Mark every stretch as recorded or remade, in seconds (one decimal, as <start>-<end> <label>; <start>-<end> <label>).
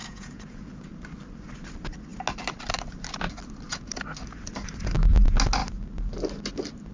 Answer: 0.0-0.6 remade; 0.6-6.9 recorded